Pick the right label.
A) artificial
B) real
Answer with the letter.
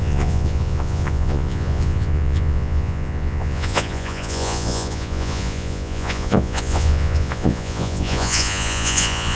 A